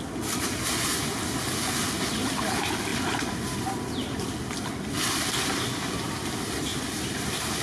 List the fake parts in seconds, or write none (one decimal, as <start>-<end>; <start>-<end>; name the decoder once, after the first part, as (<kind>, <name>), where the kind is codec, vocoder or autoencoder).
none